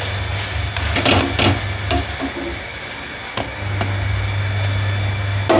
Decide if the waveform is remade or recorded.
recorded